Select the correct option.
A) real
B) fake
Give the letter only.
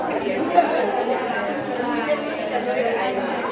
A